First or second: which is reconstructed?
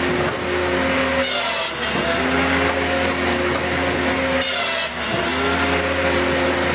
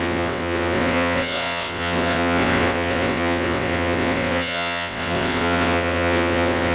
second